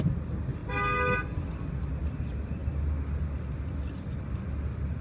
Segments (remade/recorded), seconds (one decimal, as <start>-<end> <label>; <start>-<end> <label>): 0.0-5.0 recorded